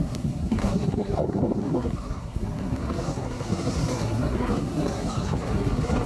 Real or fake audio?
fake